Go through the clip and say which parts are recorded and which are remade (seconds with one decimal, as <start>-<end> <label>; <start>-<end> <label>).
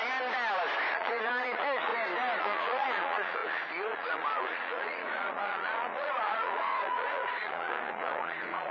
0.0-0.9 recorded; 0.9-1.9 remade; 1.9-2.4 recorded; 2.4-8.7 remade